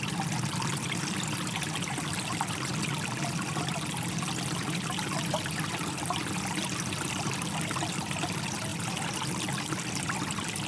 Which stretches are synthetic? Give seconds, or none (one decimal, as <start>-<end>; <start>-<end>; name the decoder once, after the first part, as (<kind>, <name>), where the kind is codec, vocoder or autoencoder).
none